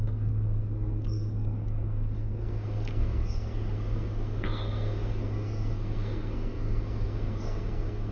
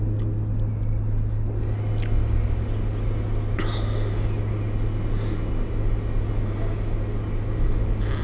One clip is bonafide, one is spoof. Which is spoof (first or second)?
first